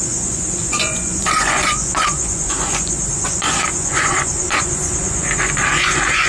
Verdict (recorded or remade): remade